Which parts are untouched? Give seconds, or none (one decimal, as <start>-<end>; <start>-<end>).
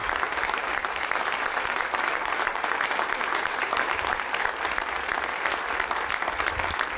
4.2-7.0